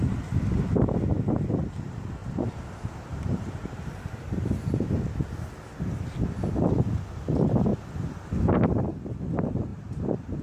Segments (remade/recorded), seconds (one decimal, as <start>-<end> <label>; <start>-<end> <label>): 0.0-2.2 recorded; 2.2-4.8 remade; 4.8-9.7 recorded; 9.7-10.4 remade